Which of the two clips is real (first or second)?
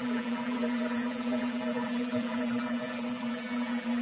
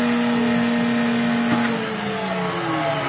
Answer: second